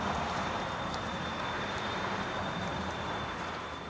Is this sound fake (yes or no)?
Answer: yes